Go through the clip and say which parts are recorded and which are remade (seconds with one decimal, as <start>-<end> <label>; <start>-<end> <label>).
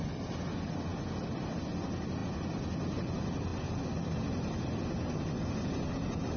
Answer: 0.0-6.4 recorded